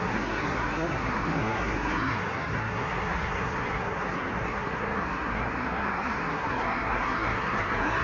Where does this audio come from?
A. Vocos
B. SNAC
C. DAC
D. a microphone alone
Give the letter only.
B